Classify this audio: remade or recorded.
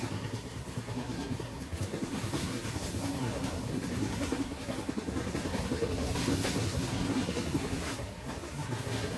remade